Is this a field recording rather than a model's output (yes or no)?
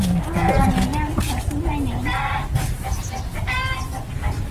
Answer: yes